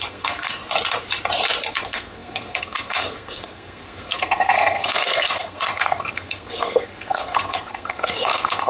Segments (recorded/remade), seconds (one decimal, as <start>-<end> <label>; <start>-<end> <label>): 0.0-0.6 remade; 0.6-1.7 recorded; 1.7-8.7 remade